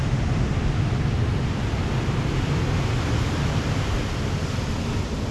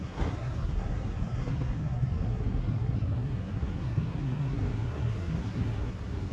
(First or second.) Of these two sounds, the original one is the first